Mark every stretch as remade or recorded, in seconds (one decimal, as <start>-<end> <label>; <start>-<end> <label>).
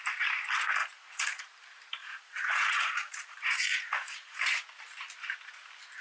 0.0-0.8 recorded; 0.8-1.4 remade; 1.4-2.0 recorded; 2.0-4.6 remade; 4.6-6.0 recorded